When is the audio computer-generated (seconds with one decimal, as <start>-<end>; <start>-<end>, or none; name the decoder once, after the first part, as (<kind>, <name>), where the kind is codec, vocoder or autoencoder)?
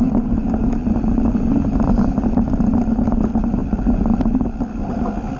0.6-2.7 (vocoder, BigVGAN v2)